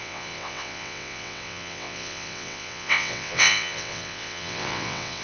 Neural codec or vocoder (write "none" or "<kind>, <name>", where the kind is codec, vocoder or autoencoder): vocoder, WaveNeXt